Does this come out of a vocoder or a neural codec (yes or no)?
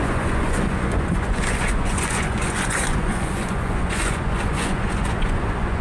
yes